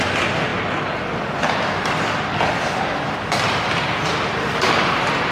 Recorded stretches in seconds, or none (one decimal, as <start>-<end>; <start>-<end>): 0.0-5.3